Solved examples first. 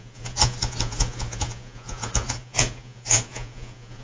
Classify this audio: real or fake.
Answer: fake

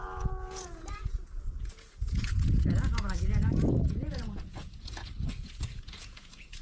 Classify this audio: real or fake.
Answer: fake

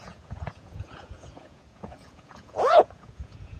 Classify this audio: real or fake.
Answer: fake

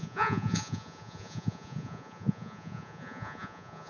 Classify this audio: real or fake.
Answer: fake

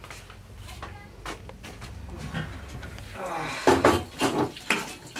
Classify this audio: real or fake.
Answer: real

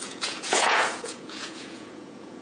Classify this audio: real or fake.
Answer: fake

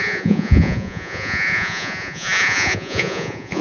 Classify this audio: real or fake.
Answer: fake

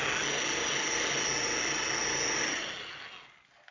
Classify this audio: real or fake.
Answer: real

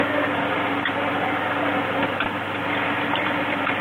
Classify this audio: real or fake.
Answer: real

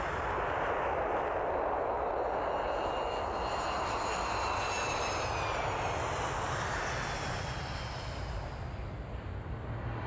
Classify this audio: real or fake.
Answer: real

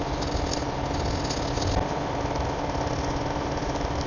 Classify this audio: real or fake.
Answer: real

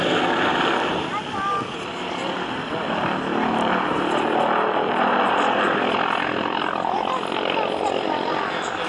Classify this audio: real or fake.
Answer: real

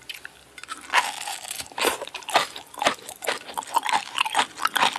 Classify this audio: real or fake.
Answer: real